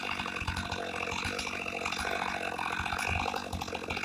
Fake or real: real